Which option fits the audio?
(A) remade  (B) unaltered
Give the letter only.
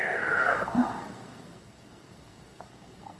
A